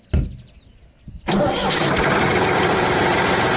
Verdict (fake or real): real